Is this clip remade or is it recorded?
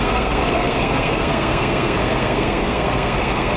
remade